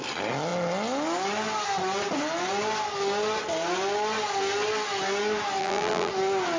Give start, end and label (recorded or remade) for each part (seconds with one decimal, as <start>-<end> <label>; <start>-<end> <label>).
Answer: 0.0-5.6 recorded; 5.6-6.1 remade; 6.1-6.6 recorded